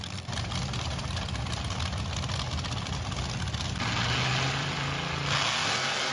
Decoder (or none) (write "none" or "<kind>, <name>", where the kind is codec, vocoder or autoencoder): none